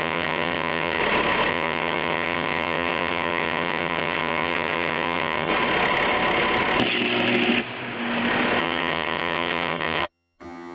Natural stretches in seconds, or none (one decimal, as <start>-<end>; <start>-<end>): 1.0-1.5; 5.5-8.6